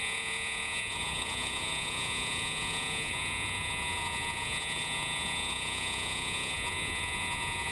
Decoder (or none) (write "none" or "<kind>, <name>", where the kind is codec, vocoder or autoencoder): vocoder, Vocos